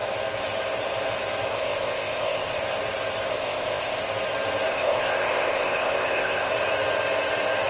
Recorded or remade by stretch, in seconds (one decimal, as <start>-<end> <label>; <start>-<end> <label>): 0.0-1.5 recorded; 1.5-2.6 remade; 2.6-3.3 recorded; 3.3-4.0 remade; 4.0-4.7 recorded; 4.7-6.5 remade; 6.5-7.7 recorded